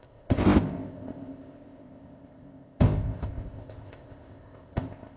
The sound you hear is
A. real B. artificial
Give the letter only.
B